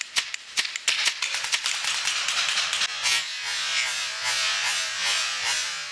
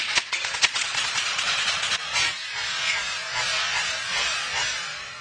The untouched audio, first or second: first